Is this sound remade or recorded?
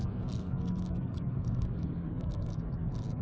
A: remade